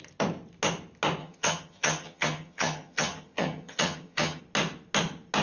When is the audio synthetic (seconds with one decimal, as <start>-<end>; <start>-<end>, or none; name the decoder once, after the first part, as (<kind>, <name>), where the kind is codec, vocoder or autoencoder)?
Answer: 1.2-4.4 (vocoder, HiFi-GAN)